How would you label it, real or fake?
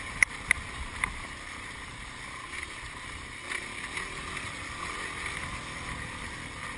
real